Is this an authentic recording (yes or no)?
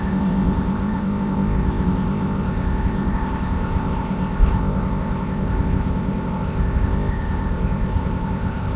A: no